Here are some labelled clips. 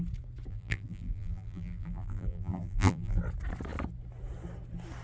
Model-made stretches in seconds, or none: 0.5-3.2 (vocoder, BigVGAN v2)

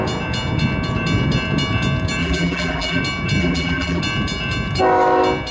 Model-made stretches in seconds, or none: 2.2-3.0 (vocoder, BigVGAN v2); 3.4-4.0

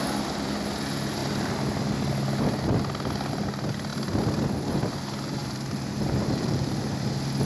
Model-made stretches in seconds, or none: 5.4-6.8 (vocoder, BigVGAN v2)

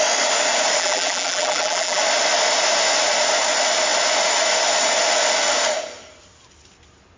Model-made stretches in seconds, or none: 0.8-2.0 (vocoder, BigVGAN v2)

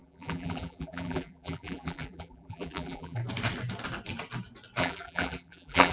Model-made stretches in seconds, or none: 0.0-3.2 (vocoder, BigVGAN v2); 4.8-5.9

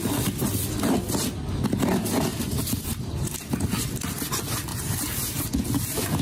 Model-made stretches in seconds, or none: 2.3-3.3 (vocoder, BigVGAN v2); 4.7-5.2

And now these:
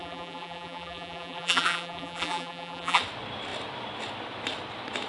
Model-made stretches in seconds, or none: 0.0-3.0 (vocoder, BigVGAN v2)